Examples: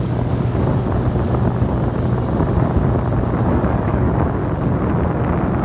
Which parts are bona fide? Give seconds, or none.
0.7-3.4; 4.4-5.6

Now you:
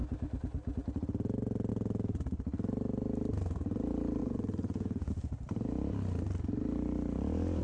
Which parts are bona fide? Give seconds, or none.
0.0-4.2; 5.1-7.6

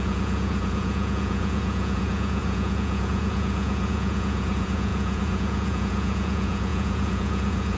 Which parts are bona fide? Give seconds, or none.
none

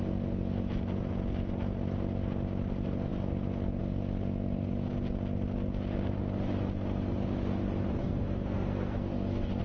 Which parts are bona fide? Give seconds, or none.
0.0-8.0